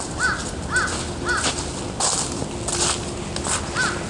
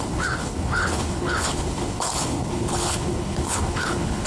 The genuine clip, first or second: first